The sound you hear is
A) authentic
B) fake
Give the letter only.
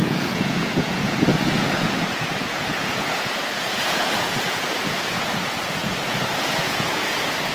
B